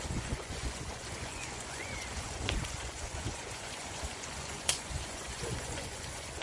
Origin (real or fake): fake